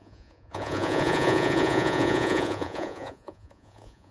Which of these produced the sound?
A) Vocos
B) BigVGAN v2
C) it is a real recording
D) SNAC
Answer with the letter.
A